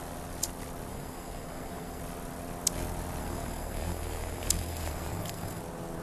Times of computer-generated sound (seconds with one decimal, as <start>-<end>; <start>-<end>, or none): 0.9-2.0; 3.2-5.6